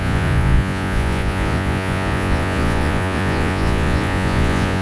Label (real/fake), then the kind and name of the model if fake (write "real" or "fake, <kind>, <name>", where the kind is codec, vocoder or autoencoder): fake, vocoder, Vocos